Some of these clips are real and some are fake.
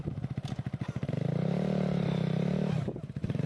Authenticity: fake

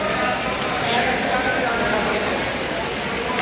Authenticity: real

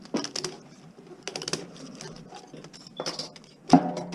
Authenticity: real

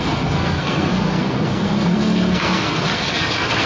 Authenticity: fake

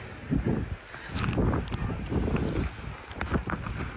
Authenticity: real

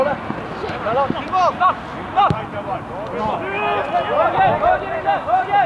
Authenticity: real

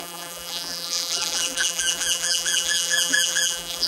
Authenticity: fake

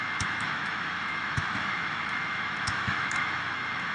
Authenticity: fake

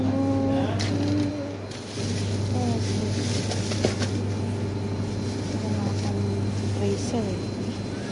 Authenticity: real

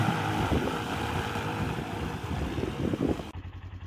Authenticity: fake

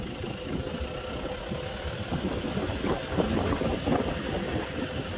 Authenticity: real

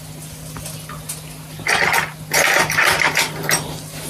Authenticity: real